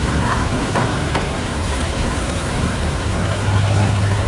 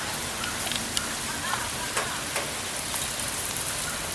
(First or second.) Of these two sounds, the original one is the second